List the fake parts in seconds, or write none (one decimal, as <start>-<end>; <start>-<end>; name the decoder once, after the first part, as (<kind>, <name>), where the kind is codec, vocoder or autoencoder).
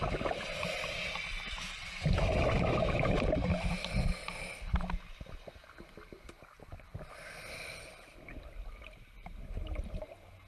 none